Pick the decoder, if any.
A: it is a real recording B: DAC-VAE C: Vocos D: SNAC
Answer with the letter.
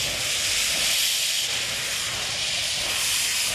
A